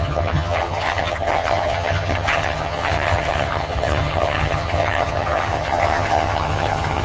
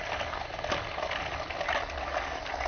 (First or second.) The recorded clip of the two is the second